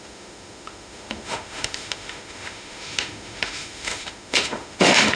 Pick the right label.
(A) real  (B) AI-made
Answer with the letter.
B